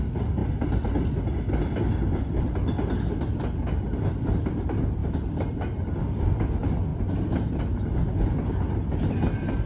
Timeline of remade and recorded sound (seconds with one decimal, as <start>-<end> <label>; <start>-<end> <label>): 0.0-5.0 recorded; 5.0-5.6 remade; 5.6-9.7 recorded